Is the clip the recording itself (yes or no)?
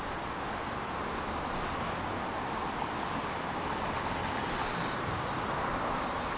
yes